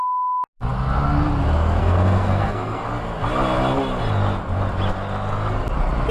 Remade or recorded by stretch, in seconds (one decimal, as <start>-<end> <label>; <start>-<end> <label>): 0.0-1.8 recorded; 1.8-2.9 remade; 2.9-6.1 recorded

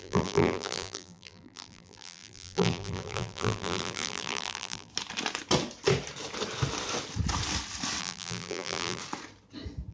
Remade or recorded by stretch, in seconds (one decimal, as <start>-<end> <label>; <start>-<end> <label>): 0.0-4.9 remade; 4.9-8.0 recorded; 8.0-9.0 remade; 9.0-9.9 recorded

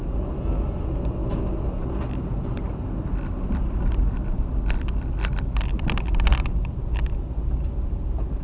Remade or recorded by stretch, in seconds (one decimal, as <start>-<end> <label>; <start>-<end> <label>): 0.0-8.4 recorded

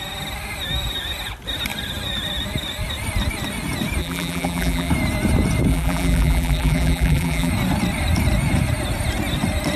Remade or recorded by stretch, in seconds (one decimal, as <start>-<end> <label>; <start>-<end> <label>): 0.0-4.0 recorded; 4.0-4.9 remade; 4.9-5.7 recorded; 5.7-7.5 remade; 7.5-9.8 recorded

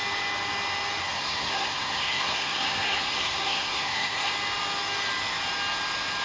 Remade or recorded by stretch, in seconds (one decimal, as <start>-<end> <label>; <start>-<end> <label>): 0.0-1.0 recorded; 1.0-4.3 remade; 4.3-6.2 recorded

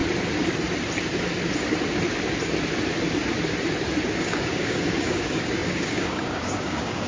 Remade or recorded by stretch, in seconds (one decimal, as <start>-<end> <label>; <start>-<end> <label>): 0.0-4.2 recorded; 4.2-7.1 remade

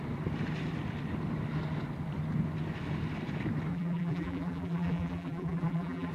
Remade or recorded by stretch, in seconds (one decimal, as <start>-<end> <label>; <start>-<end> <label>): 0.0-3.7 recorded; 3.7-6.1 remade